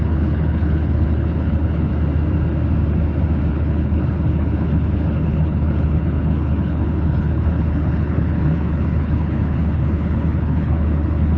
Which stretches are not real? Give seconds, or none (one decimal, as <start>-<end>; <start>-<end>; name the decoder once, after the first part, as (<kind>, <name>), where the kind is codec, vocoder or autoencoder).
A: 0.0-1.9 (codec, HILCodec); 3.5-11.4

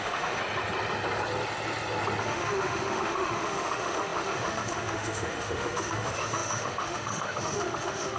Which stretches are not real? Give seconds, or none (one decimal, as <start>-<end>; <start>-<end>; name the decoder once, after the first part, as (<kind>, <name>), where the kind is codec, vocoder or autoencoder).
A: 0.0-0.4 (autoencoder, DAC-VAE); 2.2-8.2

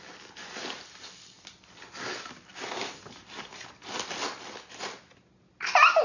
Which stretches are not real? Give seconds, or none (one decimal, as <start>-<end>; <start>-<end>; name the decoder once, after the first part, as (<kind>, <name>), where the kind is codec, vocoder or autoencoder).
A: none

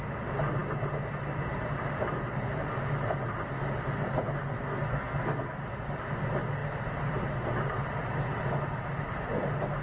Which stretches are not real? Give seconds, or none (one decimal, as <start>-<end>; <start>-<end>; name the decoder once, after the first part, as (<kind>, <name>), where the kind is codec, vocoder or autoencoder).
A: 4.7-5.6 (codec, SNAC)